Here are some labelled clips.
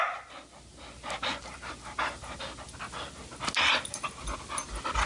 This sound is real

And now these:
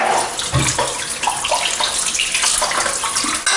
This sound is real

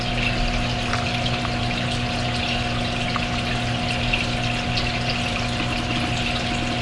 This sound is real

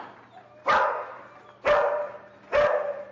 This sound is real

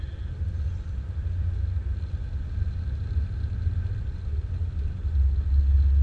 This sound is real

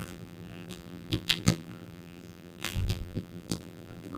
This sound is fake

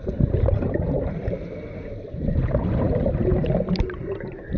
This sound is fake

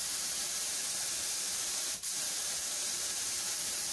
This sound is fake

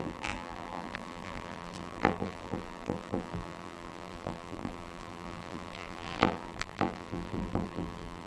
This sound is fake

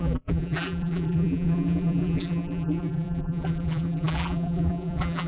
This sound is fake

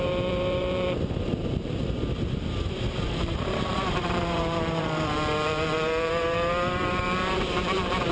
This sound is fake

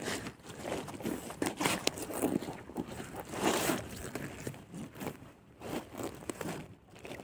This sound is fake